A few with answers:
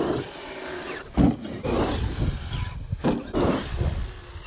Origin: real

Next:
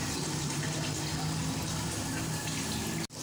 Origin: real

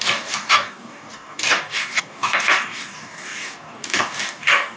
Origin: fake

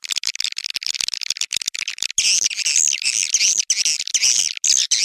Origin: real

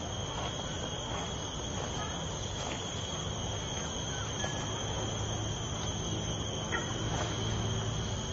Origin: real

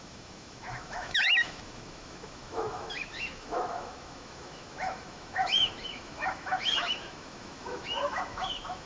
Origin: fake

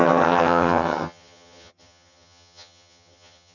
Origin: fake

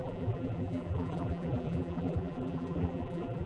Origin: fake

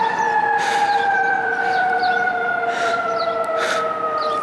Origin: fake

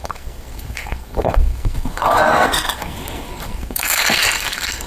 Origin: fake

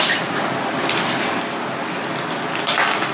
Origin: real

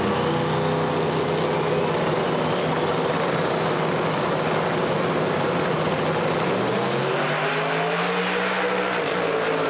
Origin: real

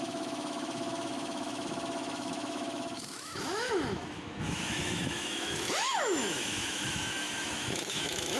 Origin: fake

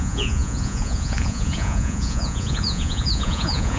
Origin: fake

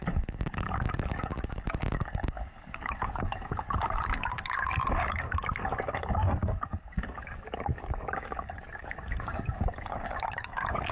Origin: fake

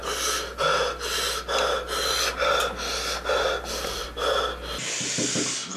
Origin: real